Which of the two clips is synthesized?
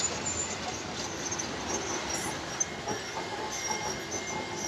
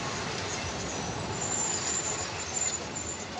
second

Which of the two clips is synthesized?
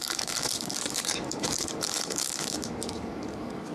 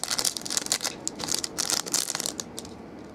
first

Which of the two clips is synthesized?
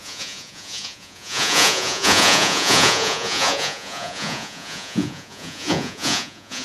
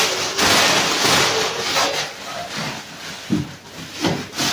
first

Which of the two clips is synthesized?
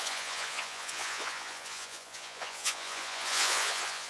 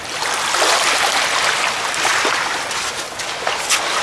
first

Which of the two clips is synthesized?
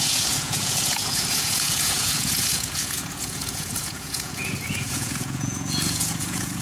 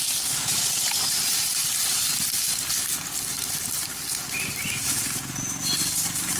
first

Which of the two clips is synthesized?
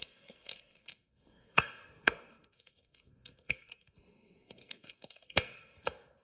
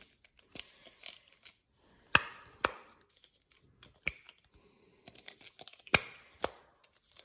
first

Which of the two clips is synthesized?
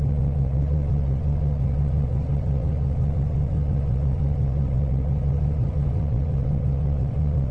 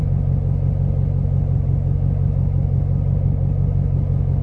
first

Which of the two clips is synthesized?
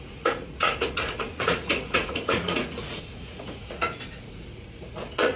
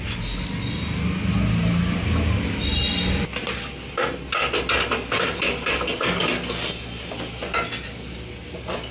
first